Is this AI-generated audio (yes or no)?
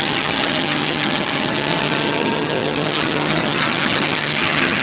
yes